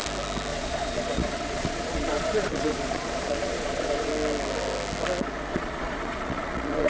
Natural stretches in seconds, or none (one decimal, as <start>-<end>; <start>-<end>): 0.0-0.5; 4.1-5.5